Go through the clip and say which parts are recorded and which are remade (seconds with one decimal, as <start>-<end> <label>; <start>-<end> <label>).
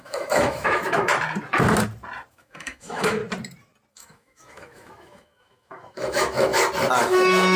0.0-1.1 remade; 1.1-2.3 recorded; 2.3-3.2 remade; 3.2-3.9 recorded; 3.9-6.5 remade; 6.5-7.0 recorded; 7.0-7.6 remade